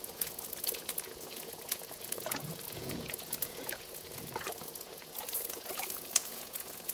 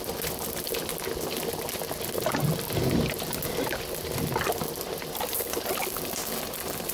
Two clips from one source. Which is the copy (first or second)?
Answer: first